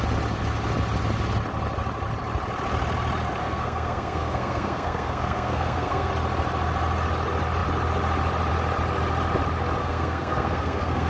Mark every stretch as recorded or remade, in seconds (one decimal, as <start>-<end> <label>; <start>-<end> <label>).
0.0-3.4 recorded; 3.4-6.1 remade; 6.1-9.8 recorded; 9.8-11.1 remade